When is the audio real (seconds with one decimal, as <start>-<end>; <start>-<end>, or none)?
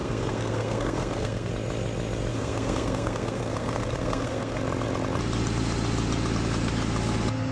1.5-2.3; 4.6-7.5